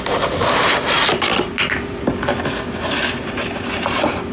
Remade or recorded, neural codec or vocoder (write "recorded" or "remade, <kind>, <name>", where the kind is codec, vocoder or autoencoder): recorded